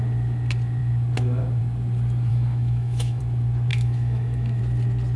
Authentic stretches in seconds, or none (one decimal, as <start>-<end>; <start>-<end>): 0.0-2.3; 3.2-3.7; 4.6-5.2